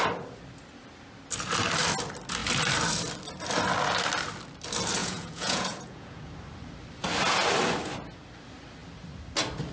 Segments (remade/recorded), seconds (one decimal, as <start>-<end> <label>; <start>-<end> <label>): 0.0-5.0 recorded; 5.0-6.3 remade; 6.3-9.7 recorded